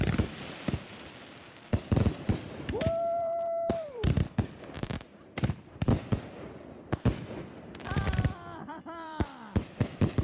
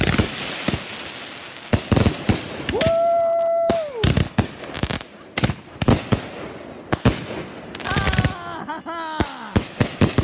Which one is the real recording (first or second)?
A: second